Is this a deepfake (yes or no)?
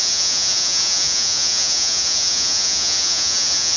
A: yes